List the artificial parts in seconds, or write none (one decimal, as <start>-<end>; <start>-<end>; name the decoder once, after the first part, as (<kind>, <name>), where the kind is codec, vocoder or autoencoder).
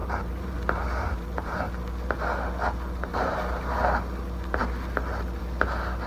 0.0-1.6 (vocoder, BigVGAN v2); 3.1-3.7